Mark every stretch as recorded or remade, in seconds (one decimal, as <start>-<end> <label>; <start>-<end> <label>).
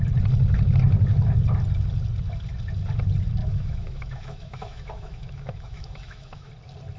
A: 0.0-3.4 recorded; 3.4-6.5 remade; 6.5-7.0 recorded